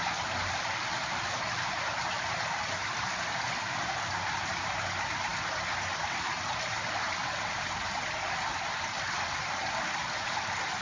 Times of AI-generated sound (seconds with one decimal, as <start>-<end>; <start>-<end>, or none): none

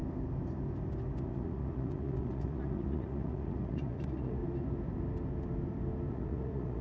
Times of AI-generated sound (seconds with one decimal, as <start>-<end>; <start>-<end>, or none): 1.3-4.4; 6.1-6.8

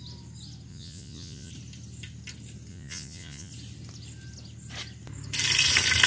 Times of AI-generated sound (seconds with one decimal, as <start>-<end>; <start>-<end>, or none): 0.7-1.5; 2.7-3.5

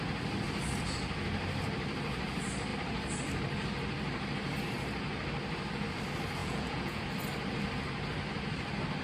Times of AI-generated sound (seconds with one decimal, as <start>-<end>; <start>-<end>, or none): 6.4-7.0

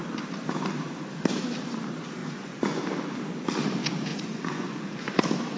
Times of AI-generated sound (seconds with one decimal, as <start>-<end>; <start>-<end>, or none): 2.2-2.8; 4.1-5.1

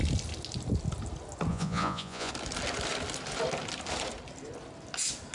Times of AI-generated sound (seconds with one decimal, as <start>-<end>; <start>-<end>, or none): 1.5-2.3